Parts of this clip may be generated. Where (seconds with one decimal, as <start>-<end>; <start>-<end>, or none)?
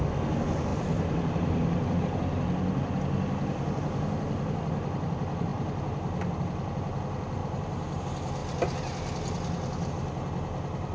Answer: 0.7-2.0; 7.4-8.0